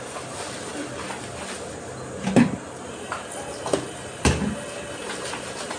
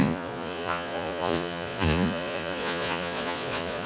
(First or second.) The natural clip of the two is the first